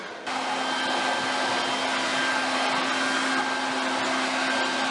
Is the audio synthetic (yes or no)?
no